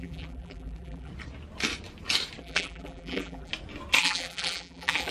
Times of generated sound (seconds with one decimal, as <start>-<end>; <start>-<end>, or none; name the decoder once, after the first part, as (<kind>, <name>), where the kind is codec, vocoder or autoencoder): 0.0-1.1 (vocoder, BigVGAN v2); 2.4-3.5; 4.0-5.1